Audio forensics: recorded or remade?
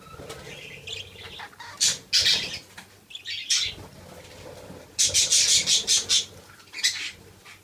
recorded